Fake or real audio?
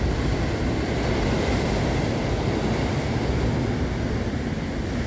real